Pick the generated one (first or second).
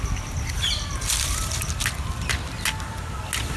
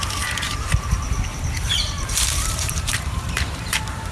second